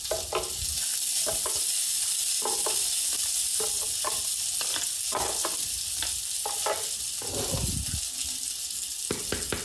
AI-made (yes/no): no